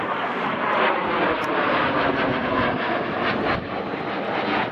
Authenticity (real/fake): real